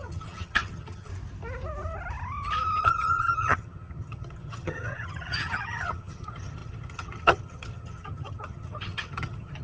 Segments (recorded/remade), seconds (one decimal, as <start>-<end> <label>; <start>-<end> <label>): 0.0-1.1 remade; 1.1-2.8 recorded; 2.8-9.6 remade